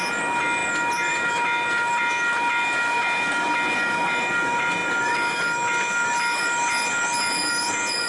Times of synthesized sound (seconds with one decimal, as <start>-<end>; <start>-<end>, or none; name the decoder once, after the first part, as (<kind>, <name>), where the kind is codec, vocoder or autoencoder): none